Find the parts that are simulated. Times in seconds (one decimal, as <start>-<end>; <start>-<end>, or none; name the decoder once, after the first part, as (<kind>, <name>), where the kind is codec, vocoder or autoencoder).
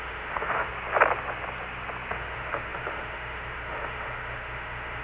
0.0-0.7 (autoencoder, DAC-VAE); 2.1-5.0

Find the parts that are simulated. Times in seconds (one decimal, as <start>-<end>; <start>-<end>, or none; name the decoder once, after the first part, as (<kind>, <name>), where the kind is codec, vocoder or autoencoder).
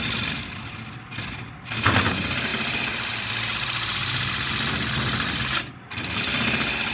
none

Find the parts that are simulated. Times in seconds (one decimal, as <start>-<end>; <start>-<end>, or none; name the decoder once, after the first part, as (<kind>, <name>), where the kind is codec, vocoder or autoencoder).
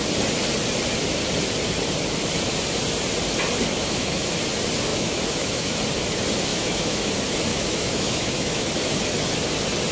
3.7-4.3 (autoencoder, DAC-VAE); 4.9-5.8; 6.5-7.1; 7.5-8.7